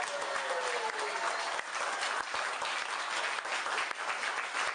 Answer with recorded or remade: recorded